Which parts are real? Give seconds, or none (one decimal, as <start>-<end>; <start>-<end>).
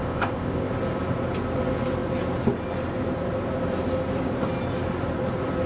0.7-5.7